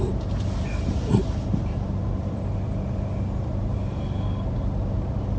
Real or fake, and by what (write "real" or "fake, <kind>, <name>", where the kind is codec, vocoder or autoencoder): real